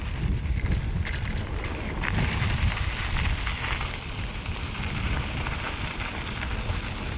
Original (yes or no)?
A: yes